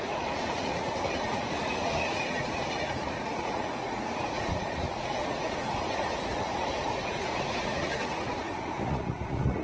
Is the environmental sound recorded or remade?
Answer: remade